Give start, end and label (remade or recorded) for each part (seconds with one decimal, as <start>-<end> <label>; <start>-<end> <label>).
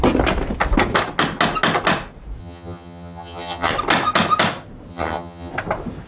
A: 0.0-2.4 recorded; 2.4-3.7 remade; 3.7-4.9 recorded; 4.9-5.5 remade; 5.5-6.1 recorded